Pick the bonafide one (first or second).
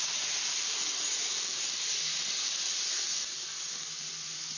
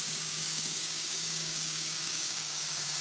first